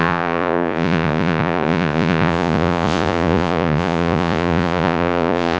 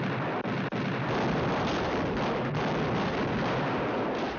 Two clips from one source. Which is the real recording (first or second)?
second